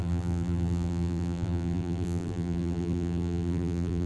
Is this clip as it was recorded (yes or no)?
no